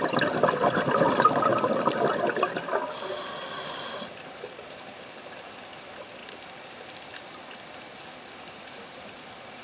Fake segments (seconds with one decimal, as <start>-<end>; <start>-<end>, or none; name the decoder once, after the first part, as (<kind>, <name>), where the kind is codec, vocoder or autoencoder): 0.0-9.6 (vocoder, BigVGAN v2)